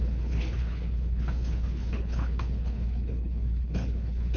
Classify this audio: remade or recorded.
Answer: remade